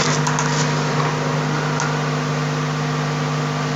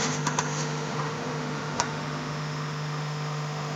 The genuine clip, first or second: first